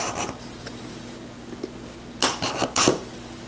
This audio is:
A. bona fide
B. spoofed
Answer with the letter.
A